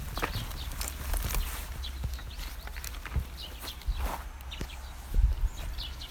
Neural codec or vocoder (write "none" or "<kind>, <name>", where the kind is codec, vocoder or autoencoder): none